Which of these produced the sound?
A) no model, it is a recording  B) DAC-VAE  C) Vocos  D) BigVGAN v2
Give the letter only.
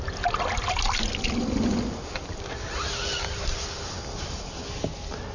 A